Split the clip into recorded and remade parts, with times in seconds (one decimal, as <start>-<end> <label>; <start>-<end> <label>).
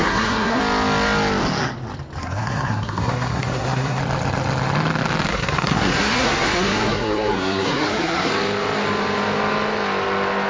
0.0-0.6 remade; 0.6-2.2 recorded; 2.2-4.0 remade; 4.0-5.3 recorded; 5.3-8.3 remade; 8.3-10.5 recorded